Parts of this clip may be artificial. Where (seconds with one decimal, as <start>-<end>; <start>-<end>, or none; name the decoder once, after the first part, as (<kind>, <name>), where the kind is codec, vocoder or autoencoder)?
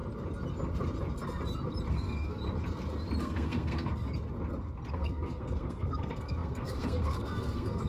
1.9-2.4 (codec, SNAC); 3.2-3.9; 4.9-7.9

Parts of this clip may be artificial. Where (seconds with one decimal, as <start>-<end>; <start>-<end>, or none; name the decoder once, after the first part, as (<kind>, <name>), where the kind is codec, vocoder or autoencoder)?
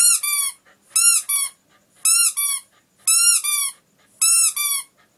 none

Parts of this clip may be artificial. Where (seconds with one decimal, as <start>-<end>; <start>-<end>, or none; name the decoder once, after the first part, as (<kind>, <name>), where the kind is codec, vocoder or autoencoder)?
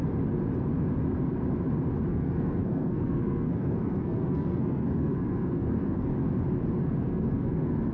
2.1-6.1 (codec, SNAC); 6.8-7.9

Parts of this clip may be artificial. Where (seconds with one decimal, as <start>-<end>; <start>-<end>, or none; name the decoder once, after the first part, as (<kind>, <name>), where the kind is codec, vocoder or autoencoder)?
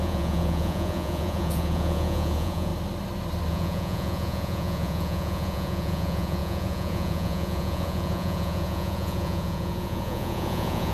0.0-2.7 (vocoder, Vocos); 3.5-10.9